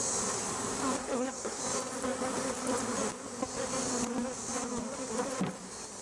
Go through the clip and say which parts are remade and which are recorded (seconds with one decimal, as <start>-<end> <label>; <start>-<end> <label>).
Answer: 0.0-1.0 recorded; 1.0-1.6 remade; 1.6-6.0 recorded